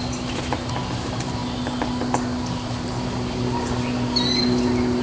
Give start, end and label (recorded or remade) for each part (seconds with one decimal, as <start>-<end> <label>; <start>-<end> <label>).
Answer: 0.0-5.0 recorded